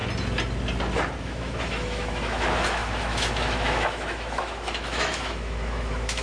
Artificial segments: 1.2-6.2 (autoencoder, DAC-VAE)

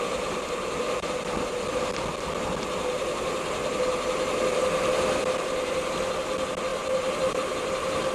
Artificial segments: none

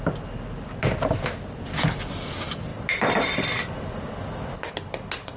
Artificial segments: none